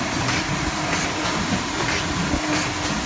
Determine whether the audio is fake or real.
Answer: real